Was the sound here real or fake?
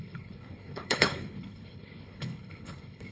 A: fake